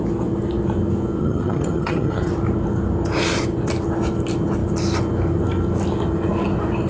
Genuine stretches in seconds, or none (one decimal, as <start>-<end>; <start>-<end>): 0.0-1.2; 2.3-6.9